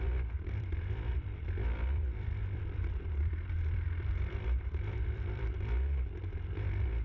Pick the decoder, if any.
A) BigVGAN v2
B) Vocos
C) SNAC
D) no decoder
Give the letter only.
A